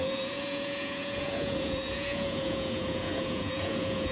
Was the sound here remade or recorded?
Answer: remade